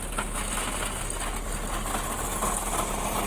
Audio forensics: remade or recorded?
recorded